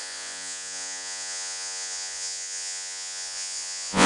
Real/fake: fake